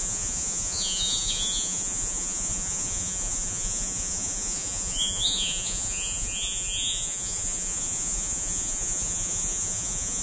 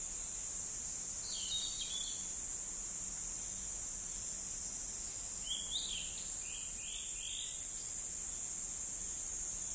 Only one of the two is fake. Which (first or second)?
first